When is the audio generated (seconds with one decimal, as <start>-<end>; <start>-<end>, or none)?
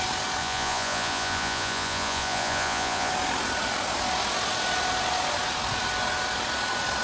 0.4-3.1